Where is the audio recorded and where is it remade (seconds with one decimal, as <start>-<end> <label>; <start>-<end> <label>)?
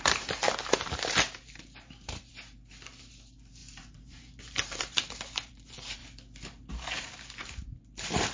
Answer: 0.0-0.4 remade; 0.4-0.9 recorded; 0.9-2.3 remade; 2.3-3.1 recorded; 3.1-6.0 remade; 6.0-6.7 recorded; 6.7-8.3 remade